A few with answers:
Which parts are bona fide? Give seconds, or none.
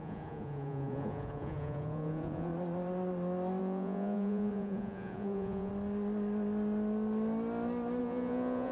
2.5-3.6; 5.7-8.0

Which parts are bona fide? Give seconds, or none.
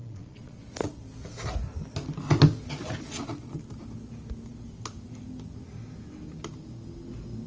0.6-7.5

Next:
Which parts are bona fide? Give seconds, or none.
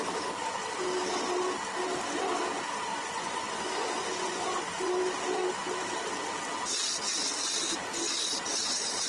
0.0-2.9; 4.9-9.1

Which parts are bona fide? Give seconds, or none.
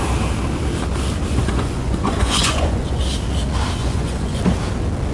0.0-1.3; 3.0-3.8; 4.4-5.1